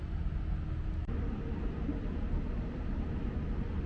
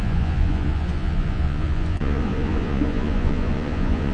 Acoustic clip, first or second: first